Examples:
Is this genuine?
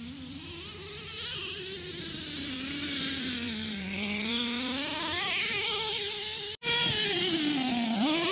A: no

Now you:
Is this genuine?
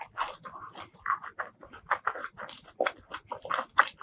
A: no